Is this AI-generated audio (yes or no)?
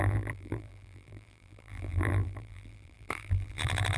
yes